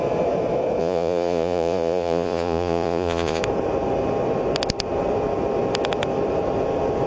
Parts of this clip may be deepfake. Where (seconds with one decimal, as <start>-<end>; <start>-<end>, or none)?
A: 0.8-3.4